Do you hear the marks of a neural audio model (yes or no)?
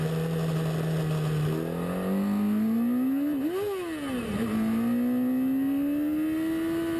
no